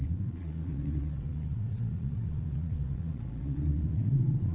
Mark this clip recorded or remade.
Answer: remade